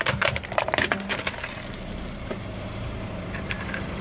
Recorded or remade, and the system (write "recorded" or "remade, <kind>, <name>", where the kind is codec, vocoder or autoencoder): remade, vocoder, BigVGAN v2